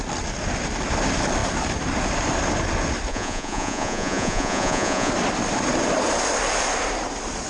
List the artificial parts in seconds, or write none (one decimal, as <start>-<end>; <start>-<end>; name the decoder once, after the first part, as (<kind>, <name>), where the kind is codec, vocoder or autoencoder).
3.1-5.1 (vocoder, Vocos)